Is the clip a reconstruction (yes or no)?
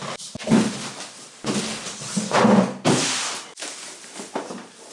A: no